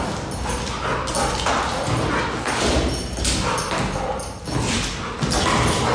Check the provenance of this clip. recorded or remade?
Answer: recorded